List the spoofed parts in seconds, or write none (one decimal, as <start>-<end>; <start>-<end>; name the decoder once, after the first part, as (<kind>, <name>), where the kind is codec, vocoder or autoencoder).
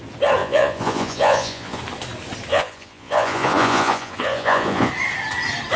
0.4-1.8 (vocoder, Vocos); 2.5-4.9